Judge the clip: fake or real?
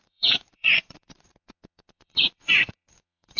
fake